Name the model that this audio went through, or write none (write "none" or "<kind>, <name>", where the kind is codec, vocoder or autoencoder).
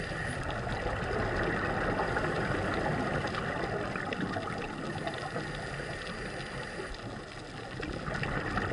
none